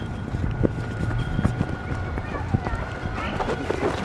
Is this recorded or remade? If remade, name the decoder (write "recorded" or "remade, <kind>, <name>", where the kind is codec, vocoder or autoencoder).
recorded